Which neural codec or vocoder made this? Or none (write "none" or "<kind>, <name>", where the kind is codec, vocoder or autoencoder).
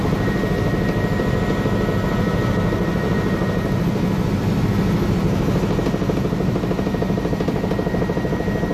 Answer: none